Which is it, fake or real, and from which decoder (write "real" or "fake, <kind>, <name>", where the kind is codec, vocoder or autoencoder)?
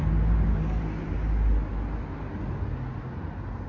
real